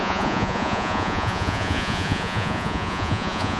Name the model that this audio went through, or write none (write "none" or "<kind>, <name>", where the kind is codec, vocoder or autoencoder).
vocoder, Vocos